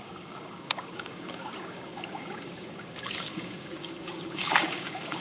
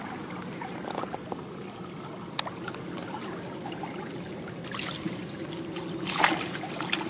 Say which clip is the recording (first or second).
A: second